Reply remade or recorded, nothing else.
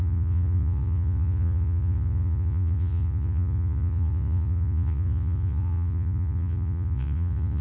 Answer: remade